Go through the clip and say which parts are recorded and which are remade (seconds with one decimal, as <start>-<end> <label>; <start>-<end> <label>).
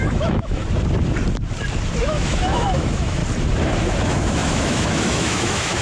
0.0-0.6 remade; 0.6-2.0 recorded; 2.0-3.2 remade; 3.2-4.0 recorded; 4.0-5.8 remade